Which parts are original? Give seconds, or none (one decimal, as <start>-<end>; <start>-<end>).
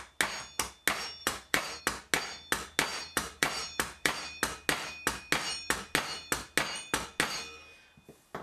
0.0-1.2; 1.8-2.9; 4.4-8.4